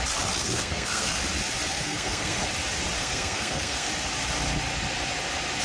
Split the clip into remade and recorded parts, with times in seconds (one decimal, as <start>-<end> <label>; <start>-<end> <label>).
0.0-0.4 recorded; 0.4-1.2 remade; 1.2-1.7 recorded; 1.7-2.4 remade; 2.4-3.0 recorded; 3.0-3.9 remade; 3.9-5.6 recorded